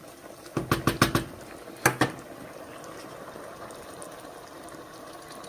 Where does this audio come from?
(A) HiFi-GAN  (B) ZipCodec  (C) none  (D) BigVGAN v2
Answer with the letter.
C